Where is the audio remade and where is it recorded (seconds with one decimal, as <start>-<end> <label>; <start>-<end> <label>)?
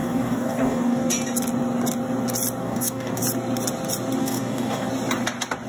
0.0-1.1 remade; 1.1-2.6 recorded; 2.6-3.2 remade; 3.2-4.2 recorded; 4.2-4.9 remade; 4.9-5.7 recorded